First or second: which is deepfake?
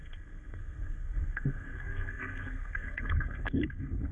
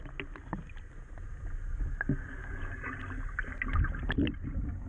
first